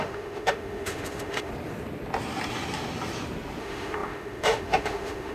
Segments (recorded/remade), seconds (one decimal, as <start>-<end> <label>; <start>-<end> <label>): 0.0-1.5 remade; 1.5-3.6 recorded; 3.6-5.3 remade